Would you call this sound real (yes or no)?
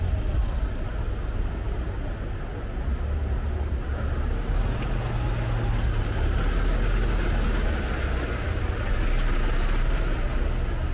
yes